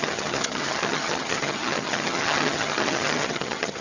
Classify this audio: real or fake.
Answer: fake